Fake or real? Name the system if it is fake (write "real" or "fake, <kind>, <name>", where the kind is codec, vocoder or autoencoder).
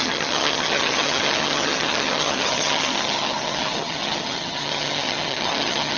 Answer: fake, vocoder, HiFi-GAN